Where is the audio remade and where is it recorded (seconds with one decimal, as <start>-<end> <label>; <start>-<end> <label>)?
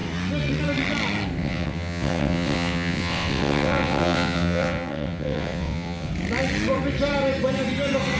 0.0-1.4 recorded; 1.4-6.1 remade; 6.1-8.2 recorded